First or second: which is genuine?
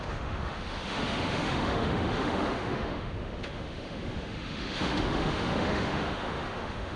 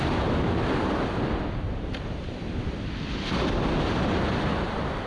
second